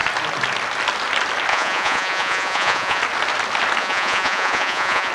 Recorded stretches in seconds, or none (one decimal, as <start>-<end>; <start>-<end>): 0.0-1.5; 3.0-3.8